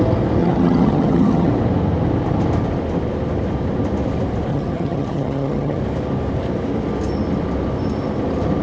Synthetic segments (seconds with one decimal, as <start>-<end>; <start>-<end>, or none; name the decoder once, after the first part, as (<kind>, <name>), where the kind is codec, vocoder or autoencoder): 0.4-1.5 (vocoder, HiFi-GAN); 4.5-5.8